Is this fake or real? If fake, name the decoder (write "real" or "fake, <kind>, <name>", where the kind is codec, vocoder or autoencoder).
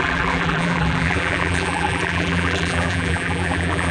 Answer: fake, vocoder, BigVGAN v2